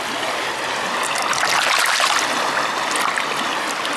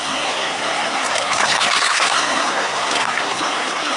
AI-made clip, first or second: second